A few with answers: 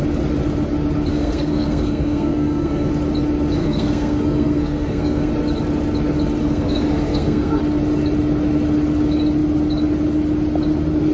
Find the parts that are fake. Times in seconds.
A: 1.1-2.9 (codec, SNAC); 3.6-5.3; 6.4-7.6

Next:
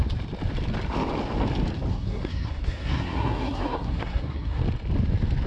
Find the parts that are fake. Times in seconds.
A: 1.9-4.6 (codec, SNAC)

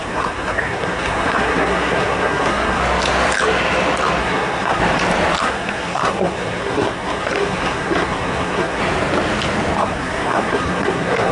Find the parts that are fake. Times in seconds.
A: 0.0-2.8 (codec, SNAC); 4.2-4.8; 5.4-8.8; 9.8-11.3